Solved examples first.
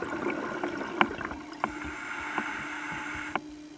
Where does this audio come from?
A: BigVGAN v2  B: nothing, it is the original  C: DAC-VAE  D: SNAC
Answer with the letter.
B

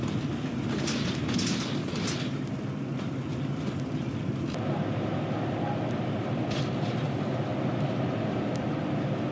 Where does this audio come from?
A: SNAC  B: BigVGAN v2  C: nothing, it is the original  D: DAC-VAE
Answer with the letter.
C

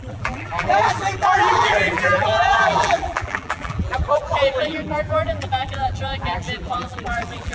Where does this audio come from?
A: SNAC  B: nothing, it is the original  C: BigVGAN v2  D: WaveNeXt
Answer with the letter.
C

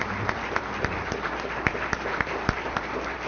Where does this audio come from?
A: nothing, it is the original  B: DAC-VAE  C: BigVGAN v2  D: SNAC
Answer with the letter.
C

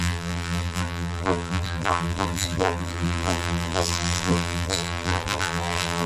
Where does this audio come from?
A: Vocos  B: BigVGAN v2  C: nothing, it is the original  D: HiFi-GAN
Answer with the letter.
B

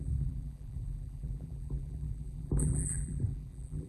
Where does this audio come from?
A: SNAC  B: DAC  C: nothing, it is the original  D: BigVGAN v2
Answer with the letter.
D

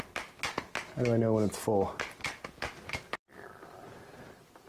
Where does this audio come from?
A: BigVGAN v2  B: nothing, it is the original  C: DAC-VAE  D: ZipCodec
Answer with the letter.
B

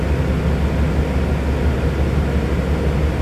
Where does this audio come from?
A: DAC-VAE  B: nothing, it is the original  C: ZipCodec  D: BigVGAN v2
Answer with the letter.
B